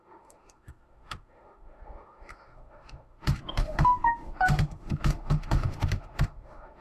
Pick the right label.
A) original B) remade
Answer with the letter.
B